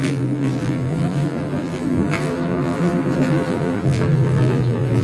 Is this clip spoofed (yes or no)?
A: yes